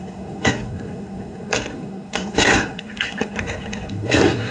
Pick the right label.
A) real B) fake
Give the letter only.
B